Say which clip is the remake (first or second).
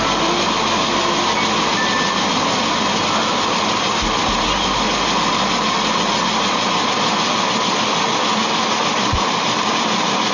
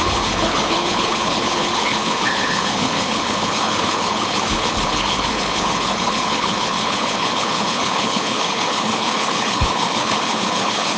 second